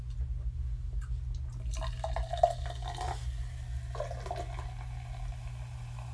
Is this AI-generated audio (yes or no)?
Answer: no